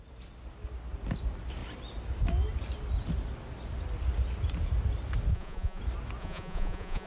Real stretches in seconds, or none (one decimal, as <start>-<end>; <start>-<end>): 0.0-5.3; 5.8-6.2

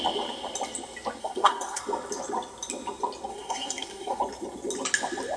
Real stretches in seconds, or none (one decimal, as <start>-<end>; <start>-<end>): 0.0-1.2; 1.8-3.3; 4.2-5.4